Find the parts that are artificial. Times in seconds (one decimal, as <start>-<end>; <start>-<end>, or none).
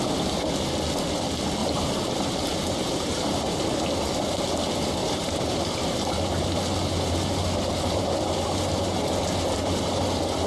1.6-3.6; 5.0-5.6